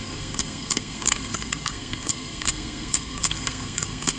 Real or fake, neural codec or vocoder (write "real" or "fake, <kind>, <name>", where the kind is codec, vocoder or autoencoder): fake, codec, SNAC